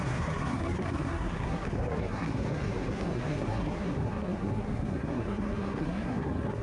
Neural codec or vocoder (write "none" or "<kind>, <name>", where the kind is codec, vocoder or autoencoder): codec, SNAC